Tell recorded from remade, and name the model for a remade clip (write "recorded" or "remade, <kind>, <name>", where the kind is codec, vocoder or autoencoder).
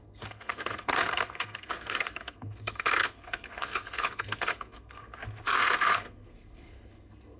remade, codec, SNAC